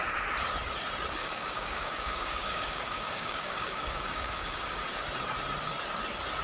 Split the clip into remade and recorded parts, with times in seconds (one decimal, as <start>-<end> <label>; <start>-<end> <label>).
0.0-1.2 recorded; 1.2-4.8 remade; 4.8-6.4 recorded